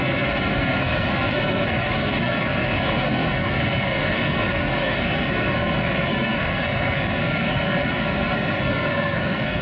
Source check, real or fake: fake